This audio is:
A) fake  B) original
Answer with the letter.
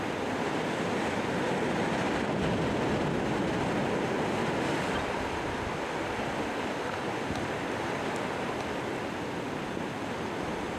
B